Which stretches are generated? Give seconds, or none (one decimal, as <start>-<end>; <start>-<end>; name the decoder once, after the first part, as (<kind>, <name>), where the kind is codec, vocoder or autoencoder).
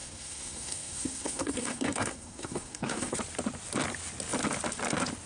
0.0-3.2 (codec, SNAC)